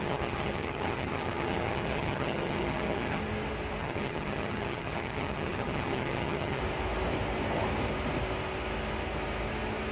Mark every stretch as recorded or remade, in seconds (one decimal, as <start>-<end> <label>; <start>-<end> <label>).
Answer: 0.0-3.2 remade; 3.2-3.8 recorded; 3.8-6.6 remade; 6.6-9.9 recorded